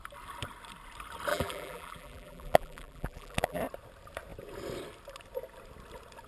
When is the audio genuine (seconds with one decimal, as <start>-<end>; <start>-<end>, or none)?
0.0-1.3; 3.6-6.3